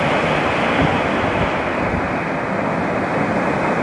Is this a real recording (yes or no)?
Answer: yes